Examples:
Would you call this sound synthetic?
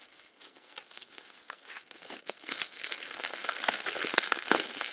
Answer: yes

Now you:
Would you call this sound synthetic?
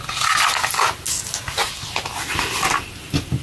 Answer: no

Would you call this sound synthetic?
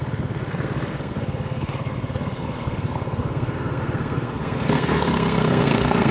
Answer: yes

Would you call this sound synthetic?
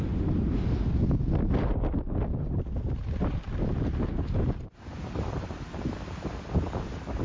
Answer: no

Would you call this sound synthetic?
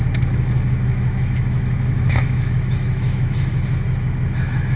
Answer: yes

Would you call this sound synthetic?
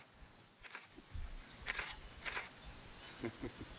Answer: yes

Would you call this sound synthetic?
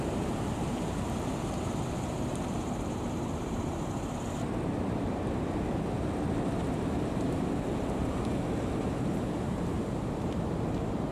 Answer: yes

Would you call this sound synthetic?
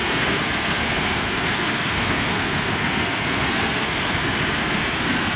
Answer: yes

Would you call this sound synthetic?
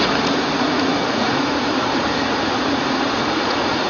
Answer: yes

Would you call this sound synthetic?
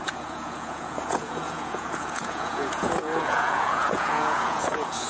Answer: yes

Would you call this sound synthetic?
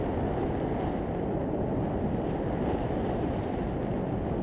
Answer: no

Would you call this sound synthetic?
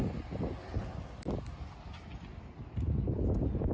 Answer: no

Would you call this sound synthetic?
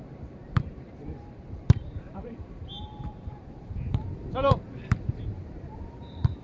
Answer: yes